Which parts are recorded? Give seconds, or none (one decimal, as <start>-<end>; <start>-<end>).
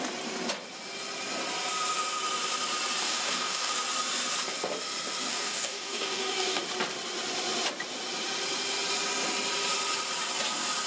0.0-3.0; 3.7-5.3; 6.6-10.9